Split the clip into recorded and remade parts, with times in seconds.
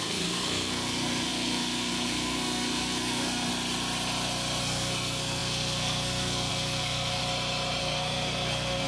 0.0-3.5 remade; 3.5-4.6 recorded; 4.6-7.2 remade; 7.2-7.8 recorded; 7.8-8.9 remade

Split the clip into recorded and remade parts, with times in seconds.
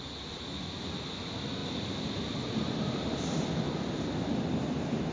0.0-5.1 recorded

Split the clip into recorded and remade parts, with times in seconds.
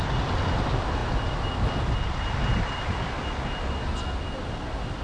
0.0-5.0 recorded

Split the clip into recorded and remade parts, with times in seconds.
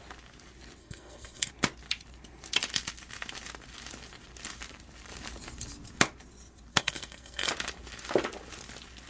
0.0-0.8 recorded; 0.8-1.5 remade; 1.5-6.7 recorded; 6.7-7.5 remade; 7.5-9.1 recorded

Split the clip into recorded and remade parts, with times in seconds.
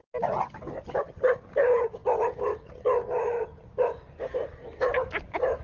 0.0-5.6 recorded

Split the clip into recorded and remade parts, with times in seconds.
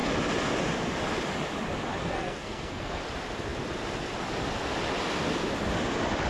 0.0-2.0 recorded; 2.0-3.0 remade; 3.0-6.3 recorded